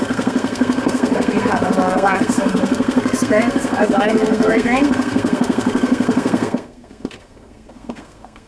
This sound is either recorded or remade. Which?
remade